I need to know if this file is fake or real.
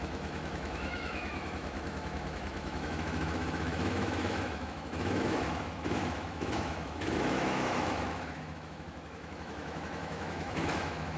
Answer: fake